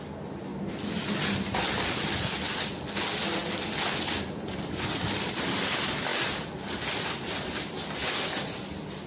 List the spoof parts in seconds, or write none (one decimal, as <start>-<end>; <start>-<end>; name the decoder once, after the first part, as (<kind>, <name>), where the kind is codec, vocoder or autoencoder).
none